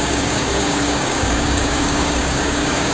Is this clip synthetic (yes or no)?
yes